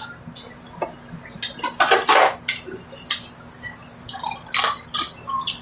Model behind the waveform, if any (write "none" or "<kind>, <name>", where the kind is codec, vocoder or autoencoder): none